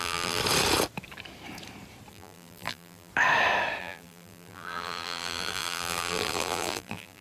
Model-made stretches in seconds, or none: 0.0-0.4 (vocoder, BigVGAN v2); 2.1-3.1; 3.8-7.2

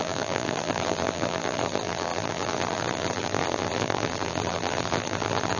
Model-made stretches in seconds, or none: 0.0-5.6 (vocoder, BigVGAN v2)

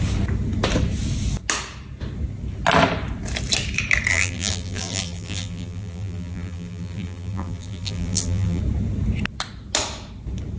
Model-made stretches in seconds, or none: 4.1-8.6 (vocoder, BigVGAN v2)

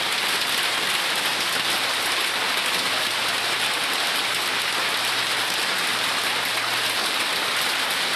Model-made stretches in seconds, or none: 7.0-8.2 (vocoder, BigVGAN v2)

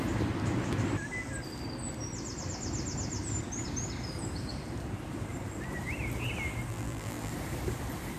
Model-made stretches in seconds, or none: 6.7-7.3 (vocoder, BigVGAN v2)

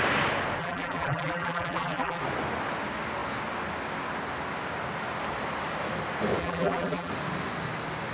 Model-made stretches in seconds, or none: 0.6-2.2 (vocoder, BigVGAN v2); 6.4-7.1

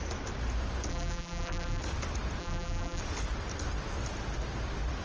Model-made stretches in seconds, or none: 0.9-1.8 (vocoder, BigVGAN v2); 2.4-3.0